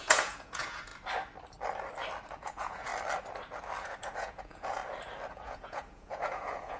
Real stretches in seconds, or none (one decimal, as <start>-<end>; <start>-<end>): 0.9-2.3; 2.9-3.8; 4.8-5.3